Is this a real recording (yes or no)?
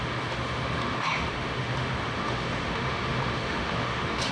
no